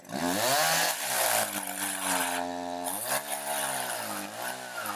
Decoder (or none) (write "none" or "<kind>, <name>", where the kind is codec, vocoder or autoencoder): none